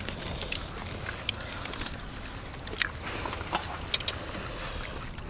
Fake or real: real